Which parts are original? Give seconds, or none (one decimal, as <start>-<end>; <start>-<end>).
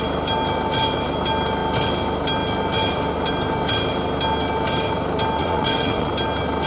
0.0-5.4; 6.1-6.7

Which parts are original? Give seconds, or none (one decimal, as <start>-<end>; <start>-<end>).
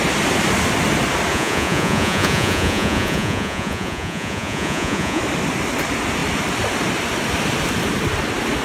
0.0-1.3; 5.2-8.6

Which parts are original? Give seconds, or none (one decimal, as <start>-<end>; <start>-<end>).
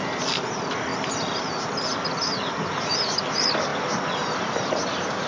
0.0-5.3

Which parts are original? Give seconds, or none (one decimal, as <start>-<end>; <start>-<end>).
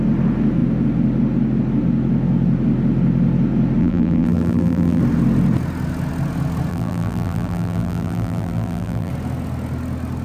0.0-3.8; 5.0-6.7; 9.1-10.2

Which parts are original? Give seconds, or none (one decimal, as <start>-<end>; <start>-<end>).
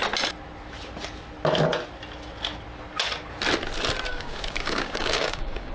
0.0-4.1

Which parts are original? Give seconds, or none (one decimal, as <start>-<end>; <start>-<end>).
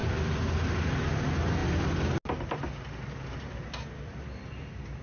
0.0-5.0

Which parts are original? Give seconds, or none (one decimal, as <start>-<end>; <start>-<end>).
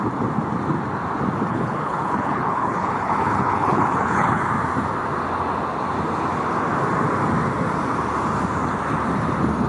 0.0-1.5; 4.4-9.7